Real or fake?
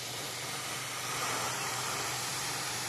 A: fake